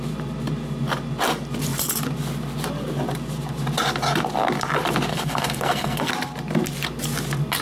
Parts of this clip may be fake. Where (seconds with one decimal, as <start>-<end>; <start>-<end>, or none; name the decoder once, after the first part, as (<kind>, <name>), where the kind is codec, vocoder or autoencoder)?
5.1-6.1 (codec, SNAC)